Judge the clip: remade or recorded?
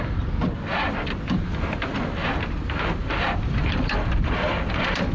recorded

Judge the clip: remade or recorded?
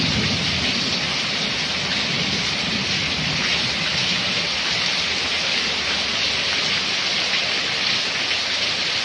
recorded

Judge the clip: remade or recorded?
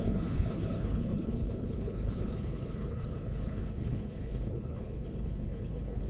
remade